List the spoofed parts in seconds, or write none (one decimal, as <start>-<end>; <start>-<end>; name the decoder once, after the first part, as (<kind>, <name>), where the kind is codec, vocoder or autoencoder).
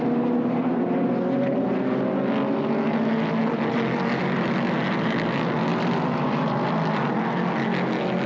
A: 3.4-4.5 (vocoder, BigVGAN v2); 5.7-7.1